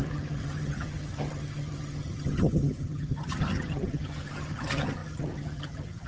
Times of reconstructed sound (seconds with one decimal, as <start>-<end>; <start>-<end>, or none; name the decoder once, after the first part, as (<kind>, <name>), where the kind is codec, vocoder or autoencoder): 0.0-6.1 (vocoder, HiFi-GAN)